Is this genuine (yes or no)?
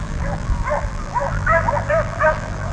no